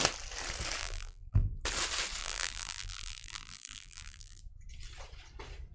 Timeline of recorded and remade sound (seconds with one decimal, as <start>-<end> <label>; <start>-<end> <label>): 0.0-0.8 recorded; 0.8-1.6 remade; 1.6-2.2 recorded; 2.2-4.4 remade; 4.4-5.7 recorded